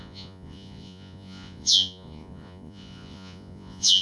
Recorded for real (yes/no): no